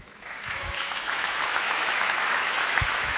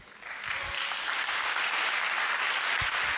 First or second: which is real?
second